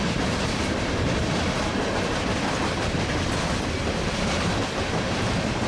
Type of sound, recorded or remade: remade